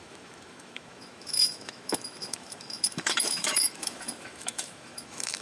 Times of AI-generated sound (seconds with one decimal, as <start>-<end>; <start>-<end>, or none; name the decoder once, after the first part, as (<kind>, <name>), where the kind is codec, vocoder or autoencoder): 0.0-5.4 (autoencoder, DAC-VAE)